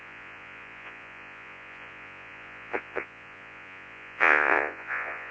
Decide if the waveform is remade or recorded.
remade